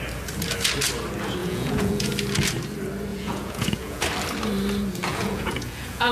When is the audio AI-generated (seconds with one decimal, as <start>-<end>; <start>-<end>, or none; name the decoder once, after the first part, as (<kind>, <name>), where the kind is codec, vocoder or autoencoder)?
1.4-2.1 (vocoder, Vocos); 3.1-4.0; 5.1-6.1